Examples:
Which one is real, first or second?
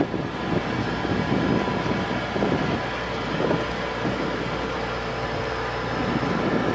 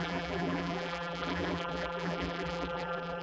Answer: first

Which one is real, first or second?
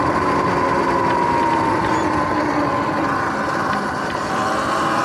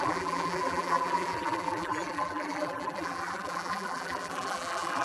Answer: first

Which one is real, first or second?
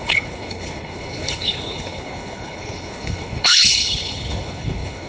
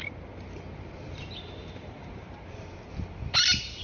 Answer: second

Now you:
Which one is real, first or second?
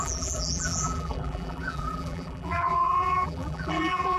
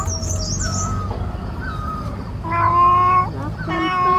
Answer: second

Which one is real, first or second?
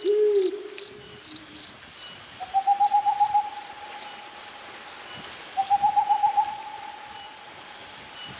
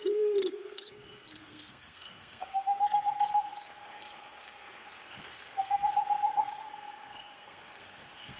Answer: first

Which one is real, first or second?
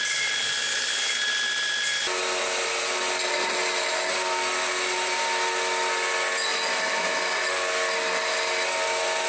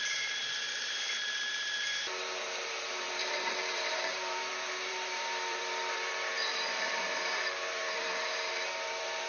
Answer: first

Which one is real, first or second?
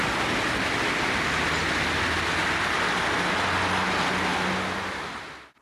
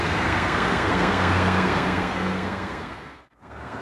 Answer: first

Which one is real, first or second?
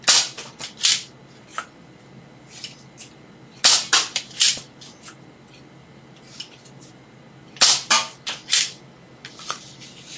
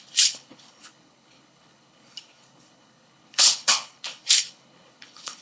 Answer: first